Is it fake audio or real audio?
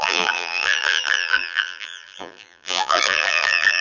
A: fake